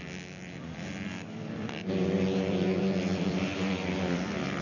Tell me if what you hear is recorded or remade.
remade